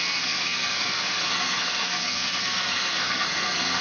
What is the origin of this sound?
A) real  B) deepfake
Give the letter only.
B